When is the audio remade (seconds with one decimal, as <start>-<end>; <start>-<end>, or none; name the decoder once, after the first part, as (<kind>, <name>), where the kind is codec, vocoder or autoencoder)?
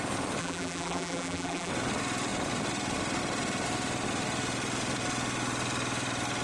0.4-1.7 (vocoder, BigVGAN v2)